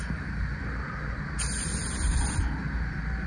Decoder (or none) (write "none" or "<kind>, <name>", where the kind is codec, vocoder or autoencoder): none